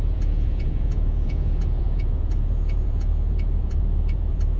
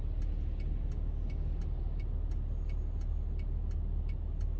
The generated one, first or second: first